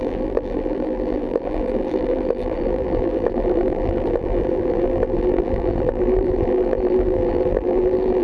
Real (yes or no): no